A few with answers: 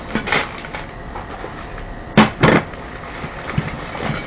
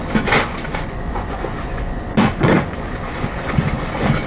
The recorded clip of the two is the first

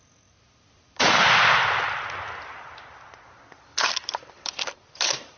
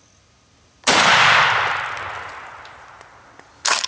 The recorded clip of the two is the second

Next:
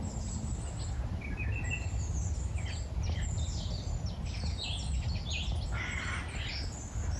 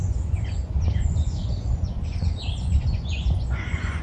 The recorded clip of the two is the first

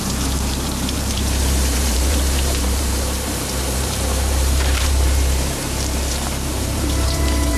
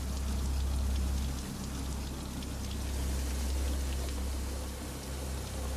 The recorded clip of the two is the second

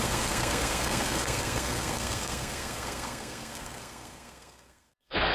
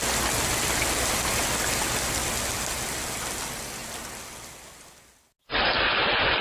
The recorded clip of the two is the second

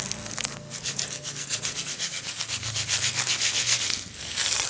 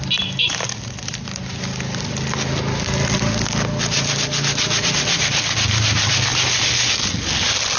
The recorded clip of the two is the second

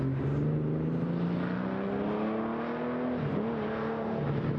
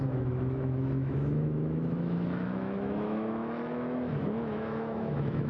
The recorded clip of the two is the first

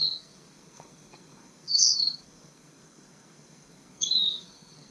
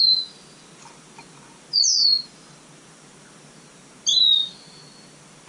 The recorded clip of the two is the second